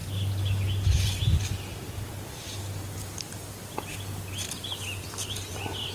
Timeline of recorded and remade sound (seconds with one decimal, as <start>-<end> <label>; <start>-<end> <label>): 0.0-5.9 recorded